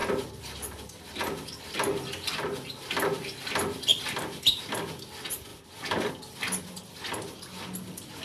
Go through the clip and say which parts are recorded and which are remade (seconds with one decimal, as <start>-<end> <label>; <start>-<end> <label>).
0.0-3.9 recorded; 3.9-4.7 remade; 4.7-5.5 recorded; 5.5-6.1 remade; 6.1-8.2 recorded